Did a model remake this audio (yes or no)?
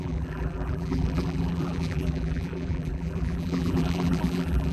yes